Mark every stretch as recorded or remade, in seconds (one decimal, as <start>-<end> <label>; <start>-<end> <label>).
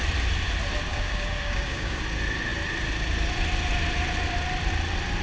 0.0-0.9 recorded; 0.9-2.0 remade; 2.0-5.2 recorded